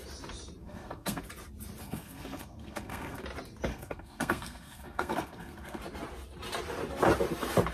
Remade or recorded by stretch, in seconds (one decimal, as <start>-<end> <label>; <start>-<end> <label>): 0.0-0.6 recorded; 0.6-1.2 remade; 1.2-1.8 recorded; 1.8-3.2 remade; 3.2-3.7 recorded; 3.7-5.8 remade; 5.8-7.7 recorded